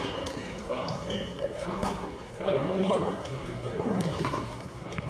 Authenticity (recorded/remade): remade